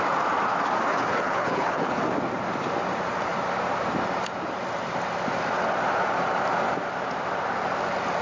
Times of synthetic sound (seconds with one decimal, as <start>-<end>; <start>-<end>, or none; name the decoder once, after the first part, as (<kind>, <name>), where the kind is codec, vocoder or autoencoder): 0.9-2.0 (codec, HILCodec)